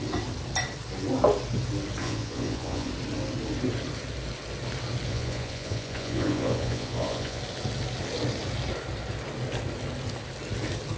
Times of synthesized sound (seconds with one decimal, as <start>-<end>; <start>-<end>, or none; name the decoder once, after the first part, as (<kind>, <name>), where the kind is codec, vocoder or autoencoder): 2.0-2.9 (vocoder, Vocos); 5.1-7.4